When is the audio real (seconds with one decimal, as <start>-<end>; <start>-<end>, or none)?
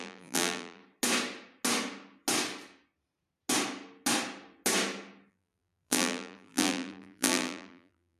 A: 0.8-5.3